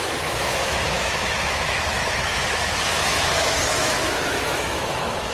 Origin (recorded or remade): remade